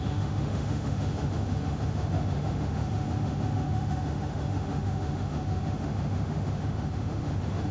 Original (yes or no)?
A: no